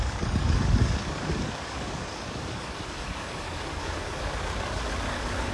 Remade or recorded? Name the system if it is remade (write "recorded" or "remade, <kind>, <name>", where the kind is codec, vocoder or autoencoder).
remade, codec, DAC